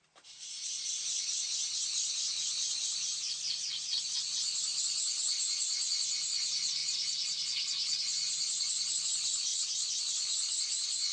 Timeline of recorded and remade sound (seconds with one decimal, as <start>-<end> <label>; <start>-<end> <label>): 0.0-9.5 recorded; 9.5-10.0 remade; 10.0-11.1 recorded